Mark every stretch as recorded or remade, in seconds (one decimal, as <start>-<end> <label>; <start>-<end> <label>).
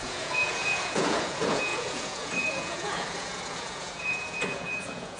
0.0-5.2 remade